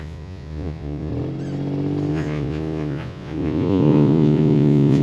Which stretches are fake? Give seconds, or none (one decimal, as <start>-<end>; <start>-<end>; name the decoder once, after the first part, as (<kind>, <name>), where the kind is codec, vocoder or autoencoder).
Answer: 0.0-1.1 (vocoder, Vocos); 2.1-5.0